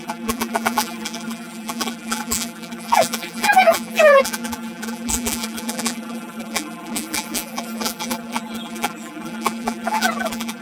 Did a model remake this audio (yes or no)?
yes